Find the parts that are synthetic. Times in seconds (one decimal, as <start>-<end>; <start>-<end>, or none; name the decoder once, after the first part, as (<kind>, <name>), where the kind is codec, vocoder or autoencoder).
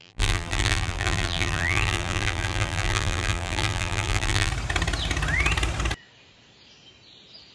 0.0-4.5 (vocoder, BigVGAN v2)